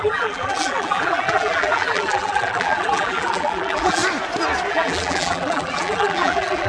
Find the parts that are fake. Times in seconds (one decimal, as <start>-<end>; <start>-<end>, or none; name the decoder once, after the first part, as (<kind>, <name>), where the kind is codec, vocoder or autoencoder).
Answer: 0.0-4.0 (vocoder, BigVGAN v2); 4.7-6.7